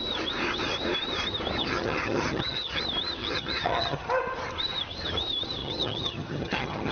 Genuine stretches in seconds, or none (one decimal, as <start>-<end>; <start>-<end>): 0.0-1.6; 2.8-3.2; 4.1-5.6